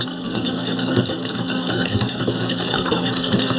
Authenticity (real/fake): fake